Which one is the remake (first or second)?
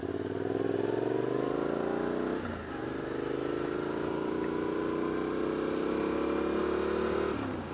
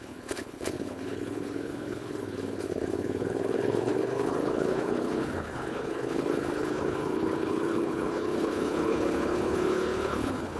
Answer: second